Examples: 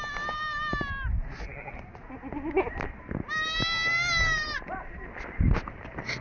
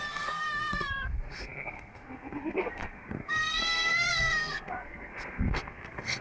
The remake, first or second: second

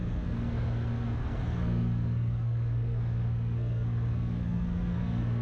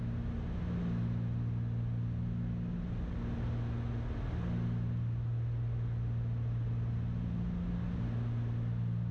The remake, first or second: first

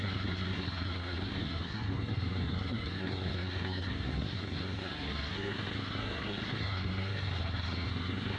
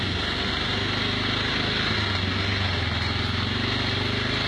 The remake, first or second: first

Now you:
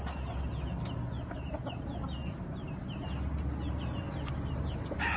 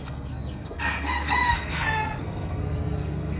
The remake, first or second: second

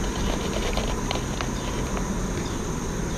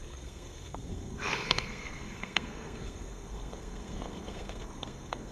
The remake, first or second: second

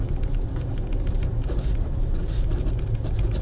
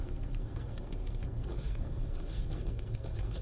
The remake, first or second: second